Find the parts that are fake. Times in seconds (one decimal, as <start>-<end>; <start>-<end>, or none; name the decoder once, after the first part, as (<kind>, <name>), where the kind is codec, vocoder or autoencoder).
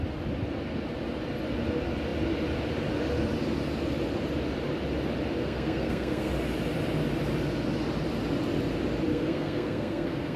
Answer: 5.4-6.3 (codec, SNAC); 9.1-10.4